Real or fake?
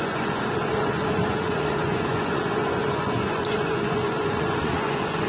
fake